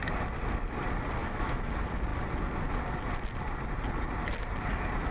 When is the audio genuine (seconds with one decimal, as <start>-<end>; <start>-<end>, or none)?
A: 0.0-1.2; 1.7-5.1